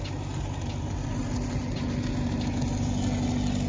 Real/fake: real